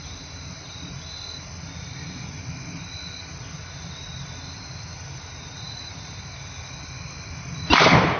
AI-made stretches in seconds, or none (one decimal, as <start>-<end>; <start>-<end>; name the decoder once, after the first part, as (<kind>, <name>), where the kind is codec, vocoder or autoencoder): none